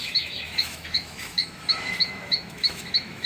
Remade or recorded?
remade